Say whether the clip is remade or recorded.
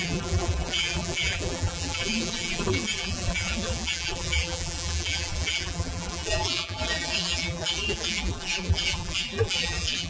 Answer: remade